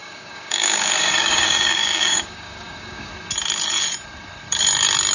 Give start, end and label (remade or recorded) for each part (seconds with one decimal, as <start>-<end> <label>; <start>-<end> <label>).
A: 0.0-3.1 remade; 3.1-5.1 recorded

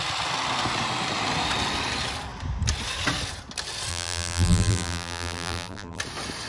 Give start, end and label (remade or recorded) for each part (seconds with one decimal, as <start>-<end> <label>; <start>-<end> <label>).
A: 0.0-3.9 recorded; 3.9-6.0 remade; 6.0-6.5 recorded

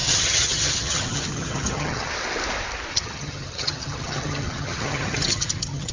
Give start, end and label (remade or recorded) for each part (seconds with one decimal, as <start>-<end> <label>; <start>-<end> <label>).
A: 0.0-2.1 remade; 2.1-2.9 recorded; 2.9-5.9 remade

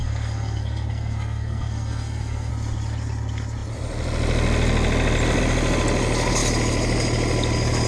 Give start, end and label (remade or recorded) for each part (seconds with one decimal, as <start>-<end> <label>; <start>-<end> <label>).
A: 0.0-2.5 remade; 2.5-7.9 recorded

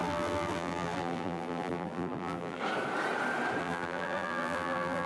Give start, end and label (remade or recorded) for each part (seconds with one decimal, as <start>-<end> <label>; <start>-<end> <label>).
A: 0.0-2.6 remade; 2.6-3.6 recorded; 3.6-5.1 remade